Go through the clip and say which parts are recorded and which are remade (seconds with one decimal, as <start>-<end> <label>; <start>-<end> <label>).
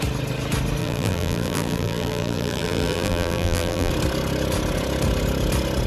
0.0-0.8 recorded; 0.8-3.9 remade; 3.9-5.9 recorded